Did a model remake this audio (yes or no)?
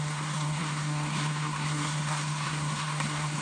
yes